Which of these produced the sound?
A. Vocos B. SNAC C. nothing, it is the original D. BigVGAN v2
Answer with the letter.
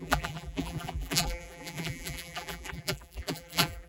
D